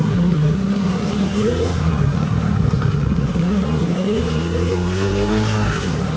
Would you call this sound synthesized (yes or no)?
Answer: yes